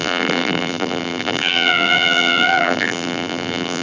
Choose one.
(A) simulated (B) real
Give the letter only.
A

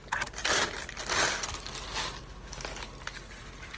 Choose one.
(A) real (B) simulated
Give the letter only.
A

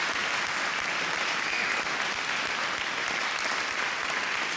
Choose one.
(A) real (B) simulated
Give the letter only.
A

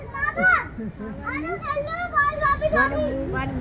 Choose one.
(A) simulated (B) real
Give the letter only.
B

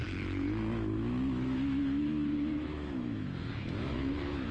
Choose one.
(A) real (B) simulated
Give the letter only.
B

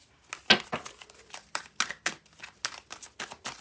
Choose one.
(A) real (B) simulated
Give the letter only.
A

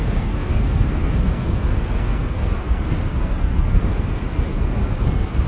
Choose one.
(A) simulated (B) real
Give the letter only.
A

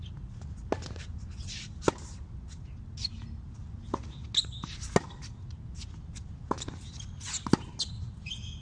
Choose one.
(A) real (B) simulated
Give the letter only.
A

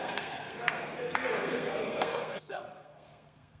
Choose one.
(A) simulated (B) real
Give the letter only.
A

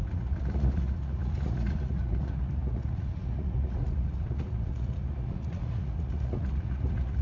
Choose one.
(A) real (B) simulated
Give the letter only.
B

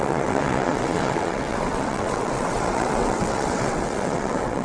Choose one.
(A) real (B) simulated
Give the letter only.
B